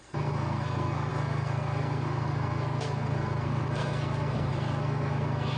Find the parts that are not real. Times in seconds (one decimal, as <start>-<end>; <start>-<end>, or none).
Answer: 0.0-5.6